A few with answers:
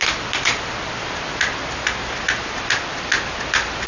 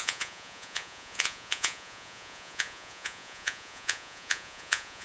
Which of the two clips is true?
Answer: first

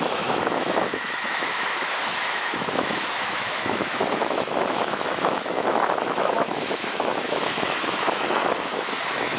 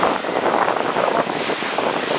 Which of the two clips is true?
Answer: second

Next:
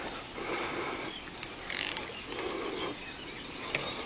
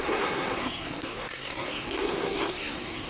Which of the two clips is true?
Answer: first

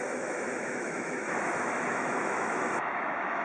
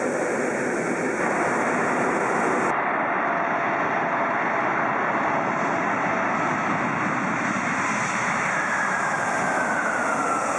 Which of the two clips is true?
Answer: second